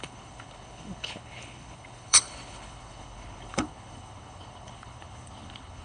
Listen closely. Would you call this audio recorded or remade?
remade